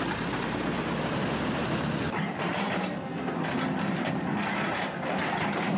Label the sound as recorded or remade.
recorded